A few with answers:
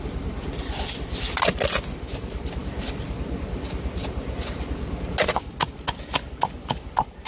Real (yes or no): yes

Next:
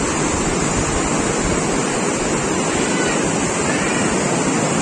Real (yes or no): yes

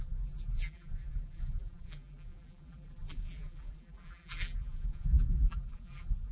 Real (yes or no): no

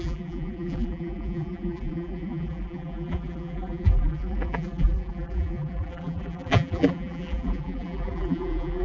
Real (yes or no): no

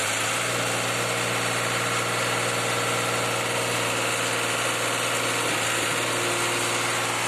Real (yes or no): yes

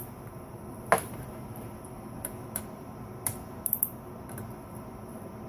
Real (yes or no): yes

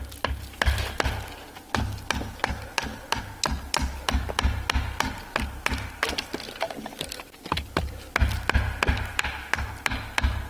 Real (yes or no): yes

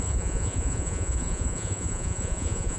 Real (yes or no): no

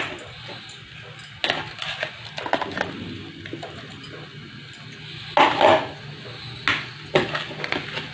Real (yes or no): yes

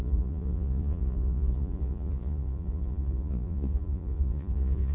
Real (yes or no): no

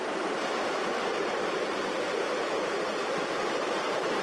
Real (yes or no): no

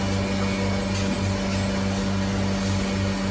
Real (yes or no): yes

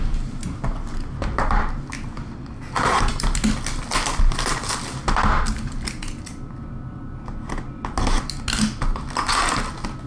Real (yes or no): yes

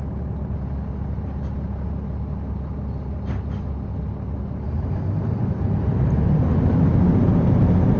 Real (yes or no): yes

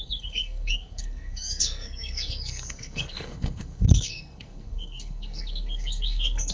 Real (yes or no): no